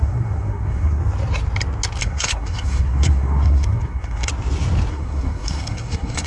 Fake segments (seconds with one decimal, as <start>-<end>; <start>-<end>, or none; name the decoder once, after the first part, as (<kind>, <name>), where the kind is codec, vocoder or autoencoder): 0.0-1.0 (codec, SNAC); 2.0-4.3; 4.9-6.3